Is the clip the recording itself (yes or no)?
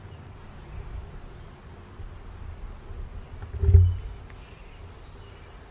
yes